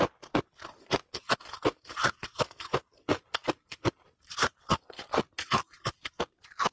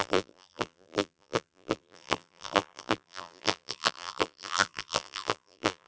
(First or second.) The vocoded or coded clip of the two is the second